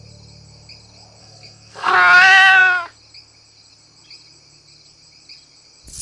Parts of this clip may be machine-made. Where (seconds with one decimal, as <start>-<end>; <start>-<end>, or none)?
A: 1.2-1.9